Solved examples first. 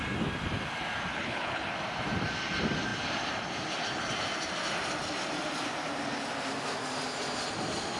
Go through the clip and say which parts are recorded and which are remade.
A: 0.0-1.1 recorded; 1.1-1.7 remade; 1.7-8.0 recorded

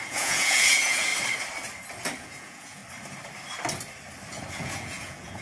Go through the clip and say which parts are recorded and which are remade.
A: 0.0-1.1 remade; 1.1-2.2 recorded; 2.2-2.8 remade; 2.8-4.5 recorded; 4.5-5.4 remade

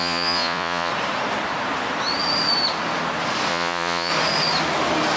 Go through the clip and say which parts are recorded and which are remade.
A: 0.0-0.9 remade; 0.9-3.5 recorded; 3.5-4.1 remade; 4.1-5.2 recorded

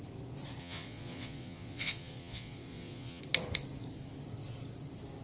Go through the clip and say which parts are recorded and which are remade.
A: 0.0-0.6 recorded; 0.6-3.2 remade; 3.2-5.2 recorded